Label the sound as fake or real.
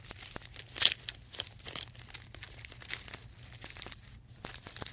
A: real